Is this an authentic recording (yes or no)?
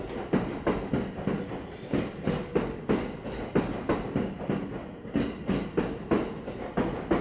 yes